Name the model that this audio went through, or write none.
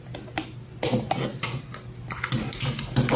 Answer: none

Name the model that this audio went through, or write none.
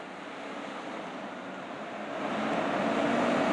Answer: none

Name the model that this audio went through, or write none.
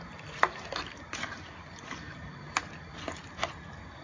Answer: none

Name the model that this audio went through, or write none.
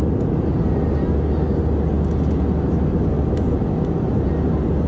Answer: none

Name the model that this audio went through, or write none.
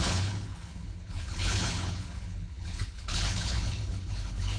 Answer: codec, HILCodec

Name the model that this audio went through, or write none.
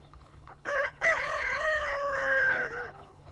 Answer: codec, HILCodec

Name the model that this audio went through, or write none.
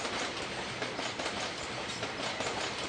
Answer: none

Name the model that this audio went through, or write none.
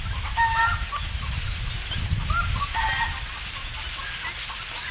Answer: none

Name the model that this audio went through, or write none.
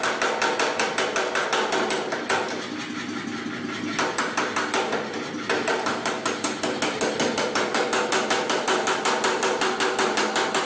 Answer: none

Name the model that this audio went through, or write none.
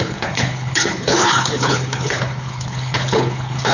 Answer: codec, HILCodec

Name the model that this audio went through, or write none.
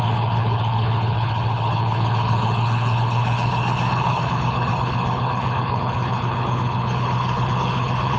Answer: codec, HILCodec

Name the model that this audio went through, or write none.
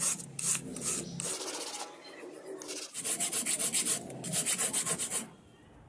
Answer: none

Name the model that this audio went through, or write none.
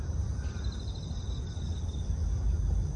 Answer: none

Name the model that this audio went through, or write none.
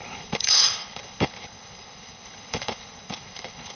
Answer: codec, HILCodec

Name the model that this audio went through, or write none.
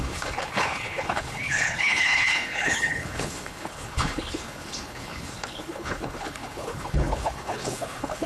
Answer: codec, HILCodec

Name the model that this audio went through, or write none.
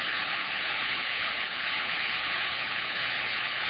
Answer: codec, HILCodec